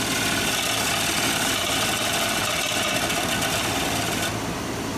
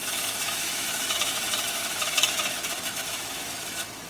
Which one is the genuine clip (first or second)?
first